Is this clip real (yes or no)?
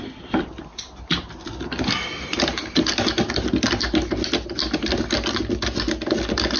yes